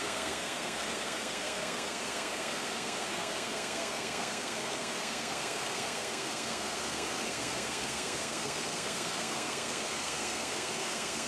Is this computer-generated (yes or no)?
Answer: yes